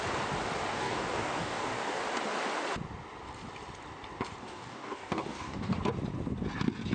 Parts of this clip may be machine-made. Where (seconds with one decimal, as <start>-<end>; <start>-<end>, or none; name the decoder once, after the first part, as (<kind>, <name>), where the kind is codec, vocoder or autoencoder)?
0.7-2.0 (codec, DAC); 4.4-5.8